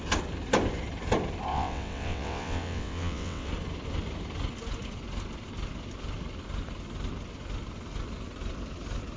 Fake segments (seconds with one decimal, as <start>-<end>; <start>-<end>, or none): 1.5-3.5